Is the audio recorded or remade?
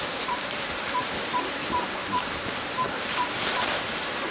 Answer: remade